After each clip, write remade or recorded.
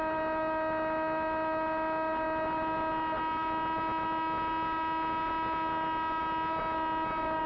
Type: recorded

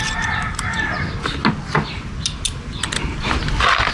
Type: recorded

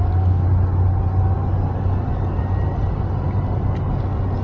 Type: recorded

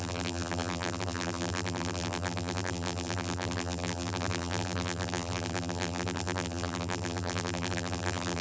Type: remade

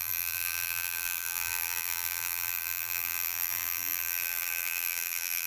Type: remade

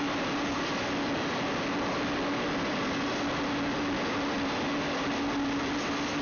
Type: recorded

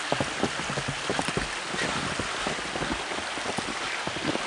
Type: recorded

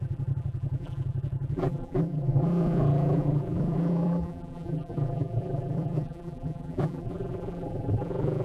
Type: remade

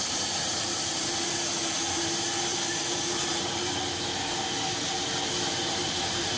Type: remade